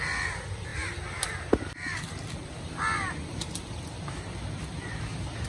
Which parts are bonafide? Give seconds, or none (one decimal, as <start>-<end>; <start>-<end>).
none